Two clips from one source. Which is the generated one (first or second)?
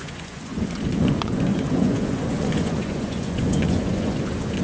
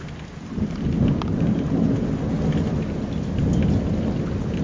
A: first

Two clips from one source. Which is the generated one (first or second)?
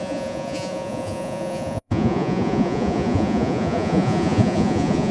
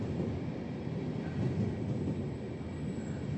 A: first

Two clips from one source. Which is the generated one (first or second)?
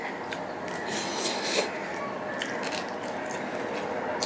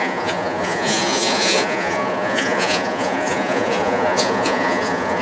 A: second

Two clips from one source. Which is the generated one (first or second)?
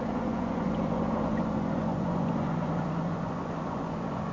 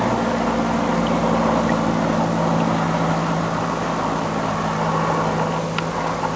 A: first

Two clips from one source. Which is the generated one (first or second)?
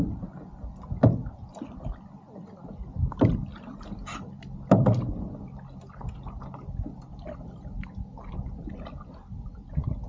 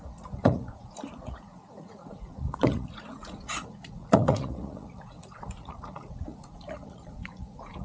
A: second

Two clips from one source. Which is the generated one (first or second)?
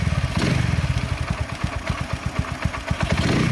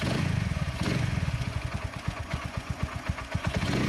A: second